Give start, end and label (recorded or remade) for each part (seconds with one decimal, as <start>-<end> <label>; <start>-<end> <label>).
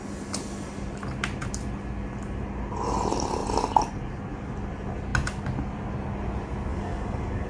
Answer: 0.0-6.7 recorded; 6.7-7.5 remade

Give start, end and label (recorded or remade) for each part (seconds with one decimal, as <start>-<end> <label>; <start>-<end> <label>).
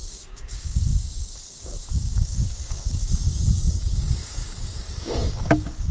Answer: 0.0-5.9 remade